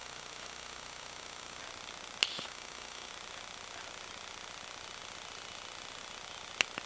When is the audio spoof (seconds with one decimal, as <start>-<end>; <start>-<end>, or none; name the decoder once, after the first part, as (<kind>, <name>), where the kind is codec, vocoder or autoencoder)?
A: 0.0-1.6 (autoencoder, DAC-VAE); 2.3-3.1